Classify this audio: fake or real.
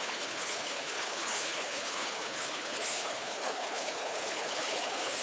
fake